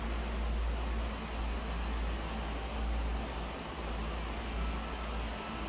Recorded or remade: recorded